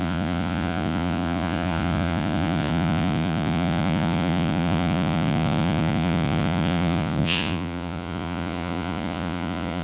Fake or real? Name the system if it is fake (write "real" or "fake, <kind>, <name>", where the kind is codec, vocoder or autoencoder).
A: fake, vocoder, Vocos